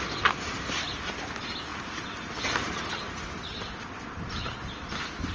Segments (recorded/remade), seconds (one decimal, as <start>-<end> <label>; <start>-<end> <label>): 0.0-5.3 recorded